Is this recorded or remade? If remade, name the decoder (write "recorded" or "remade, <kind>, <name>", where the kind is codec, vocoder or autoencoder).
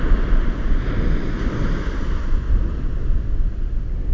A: recorded